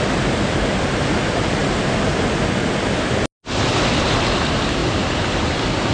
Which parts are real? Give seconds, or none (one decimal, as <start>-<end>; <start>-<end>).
1.6-3.7; 4.8-5.4